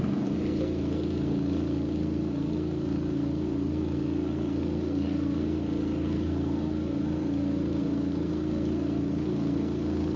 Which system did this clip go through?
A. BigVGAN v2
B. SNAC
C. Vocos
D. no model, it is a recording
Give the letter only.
B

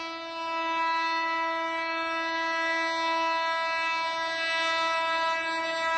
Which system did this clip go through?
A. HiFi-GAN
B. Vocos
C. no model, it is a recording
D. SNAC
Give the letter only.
C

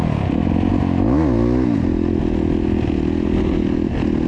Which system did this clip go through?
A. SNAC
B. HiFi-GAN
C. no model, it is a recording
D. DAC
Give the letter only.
C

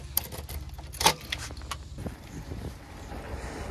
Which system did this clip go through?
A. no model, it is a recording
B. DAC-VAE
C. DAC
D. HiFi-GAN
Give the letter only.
A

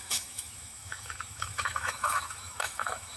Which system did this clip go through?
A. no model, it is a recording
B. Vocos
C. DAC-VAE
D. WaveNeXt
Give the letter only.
C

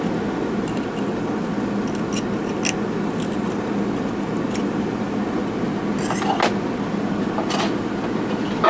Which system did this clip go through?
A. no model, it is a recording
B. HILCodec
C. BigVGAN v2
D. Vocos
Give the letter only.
A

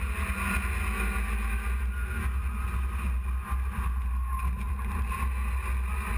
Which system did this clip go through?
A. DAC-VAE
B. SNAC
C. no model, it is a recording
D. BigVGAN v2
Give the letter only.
C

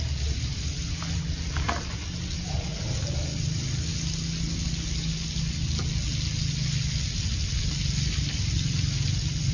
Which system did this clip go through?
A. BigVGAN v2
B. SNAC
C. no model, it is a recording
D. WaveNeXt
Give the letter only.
C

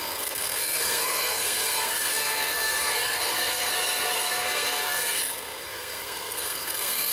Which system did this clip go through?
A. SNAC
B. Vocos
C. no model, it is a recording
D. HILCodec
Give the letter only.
A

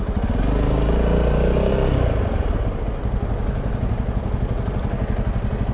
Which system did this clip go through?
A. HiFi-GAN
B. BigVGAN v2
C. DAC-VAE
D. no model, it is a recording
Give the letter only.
D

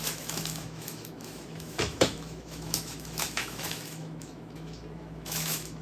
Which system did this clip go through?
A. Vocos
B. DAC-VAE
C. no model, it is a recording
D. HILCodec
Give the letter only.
B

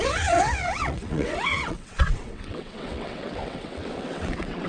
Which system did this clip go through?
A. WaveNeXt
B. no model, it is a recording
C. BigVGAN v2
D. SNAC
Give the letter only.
A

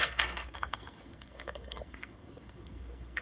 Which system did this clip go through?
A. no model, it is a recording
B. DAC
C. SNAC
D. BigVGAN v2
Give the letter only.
C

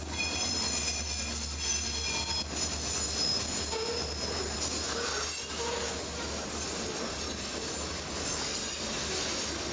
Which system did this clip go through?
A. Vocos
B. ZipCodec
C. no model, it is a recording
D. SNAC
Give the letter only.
C